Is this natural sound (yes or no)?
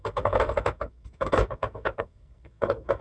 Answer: no